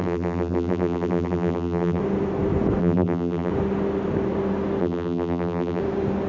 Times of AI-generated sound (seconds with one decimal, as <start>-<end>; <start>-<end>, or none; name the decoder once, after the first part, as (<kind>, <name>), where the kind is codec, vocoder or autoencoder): 0.0-2.0 (vocoder, BigVGAN v2); 2.8-3.5; 4.8-5.8